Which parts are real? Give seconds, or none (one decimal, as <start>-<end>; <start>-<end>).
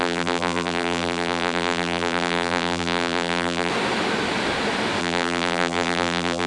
3.7-5.0